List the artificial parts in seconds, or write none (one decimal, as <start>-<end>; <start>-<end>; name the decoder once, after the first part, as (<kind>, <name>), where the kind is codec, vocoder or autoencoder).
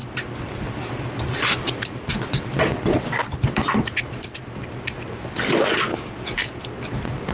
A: 0.0-4.4 (vocoder, BigVGAN v2); 5.9-6.6